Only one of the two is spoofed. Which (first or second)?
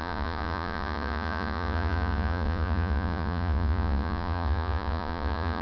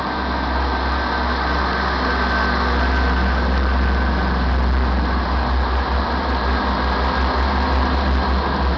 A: first